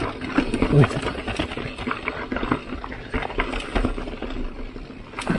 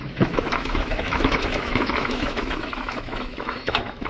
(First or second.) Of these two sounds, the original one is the first